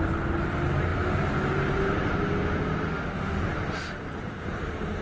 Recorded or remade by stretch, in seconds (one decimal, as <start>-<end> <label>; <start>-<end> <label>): 0.0-2.9 recorded; 2.9-3.5 remade; 3.5-5.0 recorded